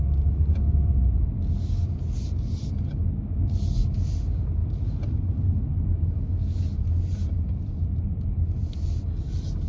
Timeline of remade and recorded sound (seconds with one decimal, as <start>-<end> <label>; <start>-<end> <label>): 0.0-9.7 recorded